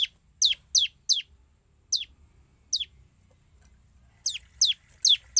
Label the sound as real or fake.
real